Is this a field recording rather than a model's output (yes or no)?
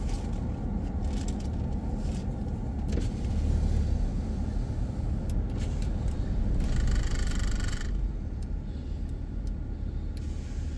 yes